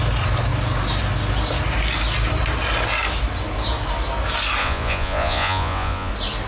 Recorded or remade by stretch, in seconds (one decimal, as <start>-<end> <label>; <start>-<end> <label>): 0.0-4.6 recorded; 4.6-6.1 remade; 6.1-6.5 recorded